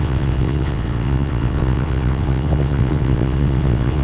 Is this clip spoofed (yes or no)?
yes